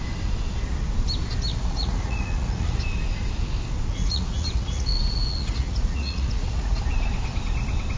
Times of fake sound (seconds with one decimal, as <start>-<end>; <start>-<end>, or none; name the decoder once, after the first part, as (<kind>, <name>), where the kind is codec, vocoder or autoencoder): 1.5-2.8 (vocoder, Vocos); 3.9-6.8

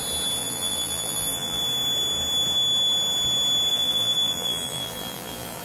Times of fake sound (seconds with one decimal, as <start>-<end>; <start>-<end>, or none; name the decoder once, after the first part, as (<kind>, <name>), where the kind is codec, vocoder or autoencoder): 0.4-1.6 (vocoder, BigVGAN v2); 3.7-5.6

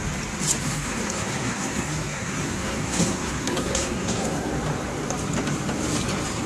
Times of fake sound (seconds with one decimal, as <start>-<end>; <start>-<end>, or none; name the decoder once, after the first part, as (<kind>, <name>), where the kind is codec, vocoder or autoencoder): 0.6-4.5 (codec, SNAC)